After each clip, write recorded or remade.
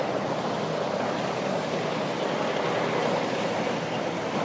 recorded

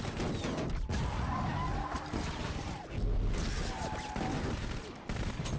recorded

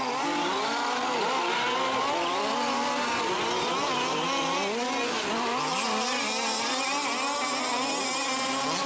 recorded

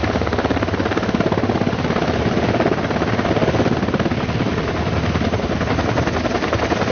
recorded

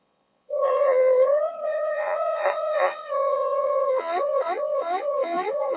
remade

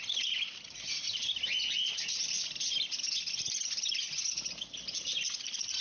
recorded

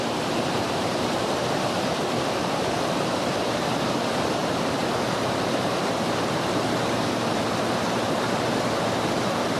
remade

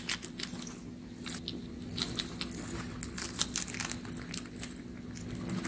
recorded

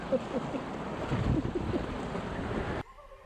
recorded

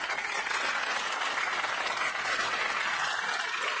recorded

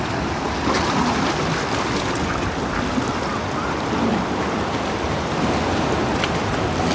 recorded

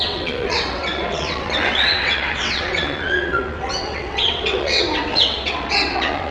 remade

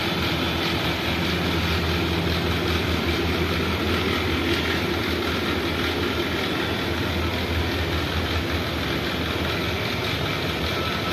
recorded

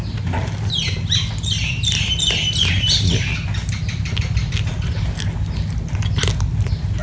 recorded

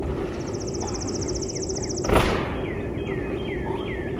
recorded